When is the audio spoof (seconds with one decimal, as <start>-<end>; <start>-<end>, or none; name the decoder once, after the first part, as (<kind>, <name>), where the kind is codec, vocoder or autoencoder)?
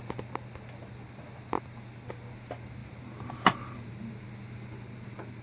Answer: 2.8-3.9 (vocoder, BigVGAN v2)